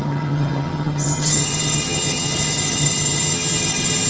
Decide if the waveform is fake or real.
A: fake